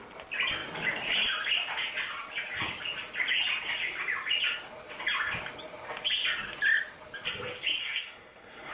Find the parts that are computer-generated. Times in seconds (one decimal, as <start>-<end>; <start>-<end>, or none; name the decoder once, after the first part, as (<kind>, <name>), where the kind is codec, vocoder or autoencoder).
7.8-8.7 (codec, SNAC)